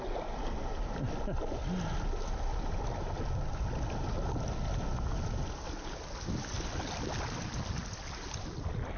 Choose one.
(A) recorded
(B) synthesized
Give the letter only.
A